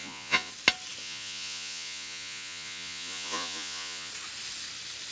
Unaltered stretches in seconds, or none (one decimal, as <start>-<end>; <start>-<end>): 0.5-1.0; 4.1-5.1